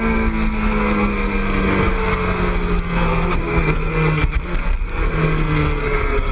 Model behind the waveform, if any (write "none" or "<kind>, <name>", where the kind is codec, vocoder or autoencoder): codec, SNAC